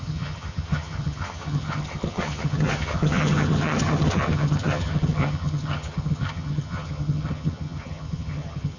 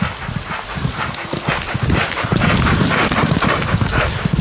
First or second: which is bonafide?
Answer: second